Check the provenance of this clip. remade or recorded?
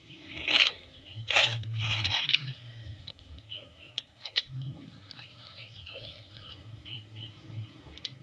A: remade